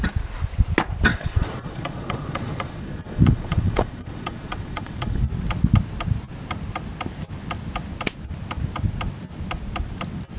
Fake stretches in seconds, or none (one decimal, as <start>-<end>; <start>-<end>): 1.1-5.2